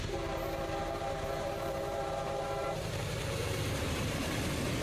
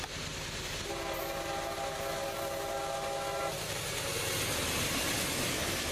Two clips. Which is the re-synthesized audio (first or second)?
first